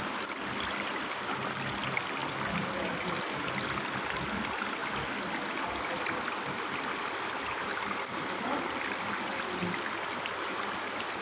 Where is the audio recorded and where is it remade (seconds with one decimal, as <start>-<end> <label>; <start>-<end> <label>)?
0.0-11.2 recorded